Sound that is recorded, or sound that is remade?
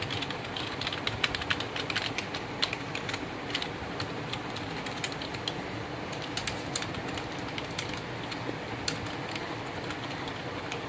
recorded